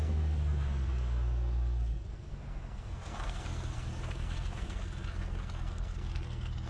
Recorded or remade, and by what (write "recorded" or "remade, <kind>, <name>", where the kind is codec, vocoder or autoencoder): remade, codec, SNAC